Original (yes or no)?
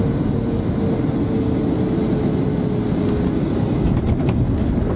yes